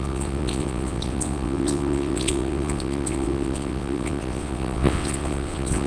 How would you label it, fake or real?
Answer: fake